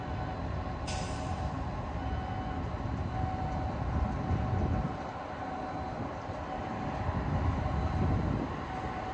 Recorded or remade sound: recorded